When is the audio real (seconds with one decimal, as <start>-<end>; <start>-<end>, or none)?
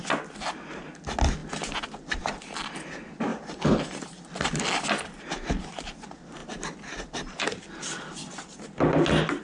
0.0-9.4